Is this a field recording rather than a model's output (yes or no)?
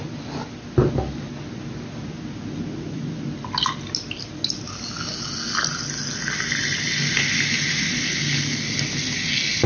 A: yes